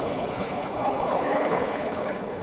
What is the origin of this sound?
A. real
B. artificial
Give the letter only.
B